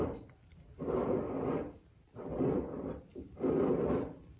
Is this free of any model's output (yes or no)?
yes